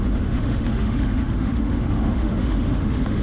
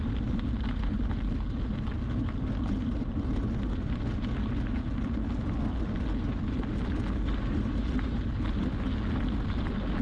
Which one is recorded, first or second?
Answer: second